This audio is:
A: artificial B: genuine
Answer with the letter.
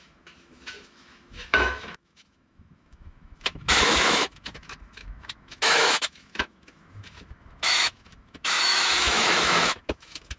A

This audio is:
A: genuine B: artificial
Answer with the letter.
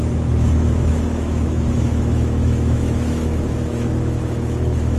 B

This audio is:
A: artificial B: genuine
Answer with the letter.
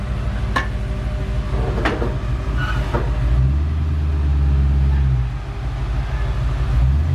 B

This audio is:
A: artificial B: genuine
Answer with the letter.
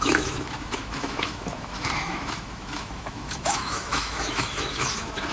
A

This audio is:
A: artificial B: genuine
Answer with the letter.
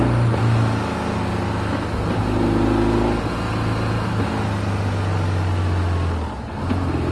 B